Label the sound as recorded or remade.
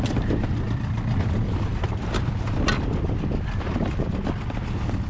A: recorded